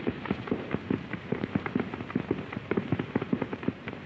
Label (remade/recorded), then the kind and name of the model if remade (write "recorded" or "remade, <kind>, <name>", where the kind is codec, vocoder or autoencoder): remade, vocoder, BigVGAN v2